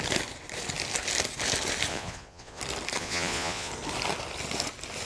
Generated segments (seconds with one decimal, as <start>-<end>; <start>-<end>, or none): 1.9-2.6; 3.0-3.7